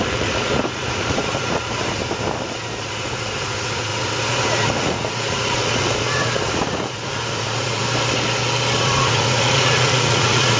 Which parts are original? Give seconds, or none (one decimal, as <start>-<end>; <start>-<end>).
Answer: 2.0-2.8; 7.8-8.8